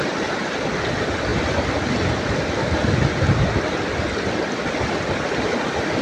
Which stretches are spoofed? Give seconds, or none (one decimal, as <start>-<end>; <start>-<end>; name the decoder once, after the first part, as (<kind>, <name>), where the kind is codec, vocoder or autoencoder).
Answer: none